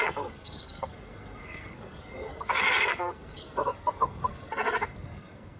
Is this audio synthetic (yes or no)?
yes